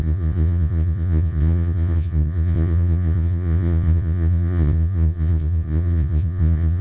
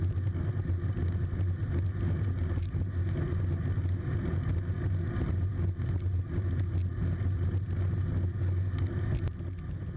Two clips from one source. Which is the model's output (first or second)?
first